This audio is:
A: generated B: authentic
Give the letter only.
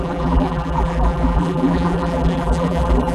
A